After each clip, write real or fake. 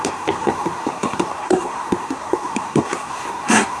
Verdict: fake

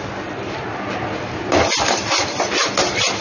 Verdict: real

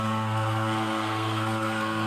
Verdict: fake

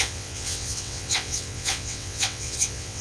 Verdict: fake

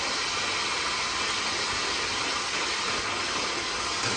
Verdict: real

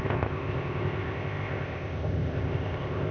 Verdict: fake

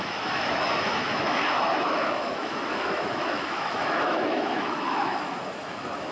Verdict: fake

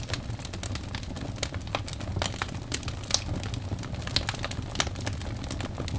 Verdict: real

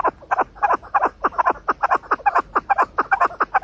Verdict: real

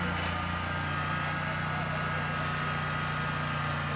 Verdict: real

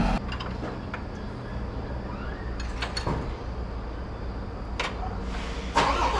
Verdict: real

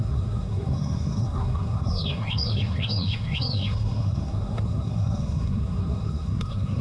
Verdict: fake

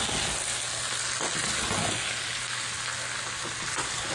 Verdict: real